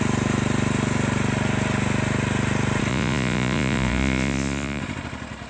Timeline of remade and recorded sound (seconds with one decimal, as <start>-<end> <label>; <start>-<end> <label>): 0.0-2.9 recorded; 2.9-4.8 remade; 4.8-5.5 recorded